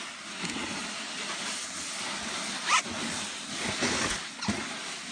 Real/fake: real